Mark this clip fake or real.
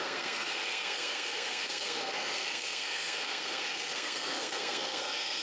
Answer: fake